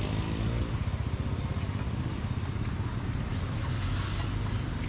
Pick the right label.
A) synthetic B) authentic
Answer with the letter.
B